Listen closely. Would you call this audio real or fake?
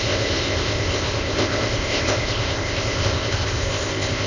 fake